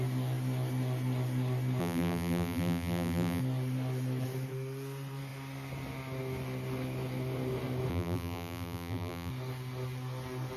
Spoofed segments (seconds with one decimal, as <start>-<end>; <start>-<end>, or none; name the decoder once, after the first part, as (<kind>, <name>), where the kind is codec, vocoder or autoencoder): 1.8-3.4 (vocoder, BigVGAN v2); 7.9-9.3